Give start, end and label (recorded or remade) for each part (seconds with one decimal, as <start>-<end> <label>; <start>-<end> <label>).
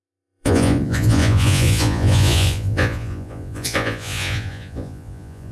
0.0-5.5 remade